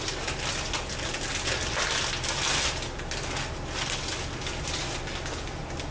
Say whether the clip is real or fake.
real